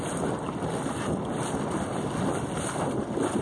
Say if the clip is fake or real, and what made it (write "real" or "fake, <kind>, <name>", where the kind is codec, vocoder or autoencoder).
real